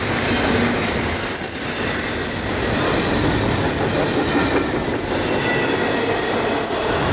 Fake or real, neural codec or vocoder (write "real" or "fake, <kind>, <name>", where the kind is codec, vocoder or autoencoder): real